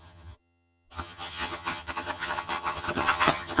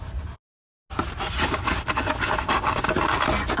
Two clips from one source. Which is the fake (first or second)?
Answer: first